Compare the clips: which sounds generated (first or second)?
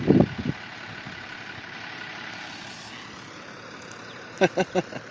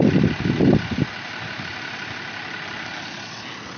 second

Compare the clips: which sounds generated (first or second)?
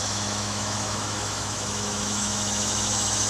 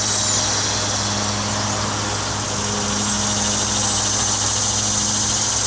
first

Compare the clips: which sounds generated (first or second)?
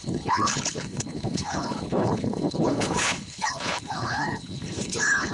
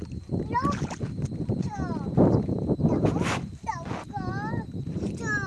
first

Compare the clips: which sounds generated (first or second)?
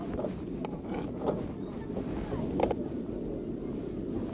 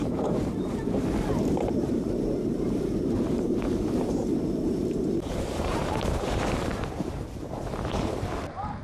second